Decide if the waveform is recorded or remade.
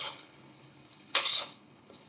remade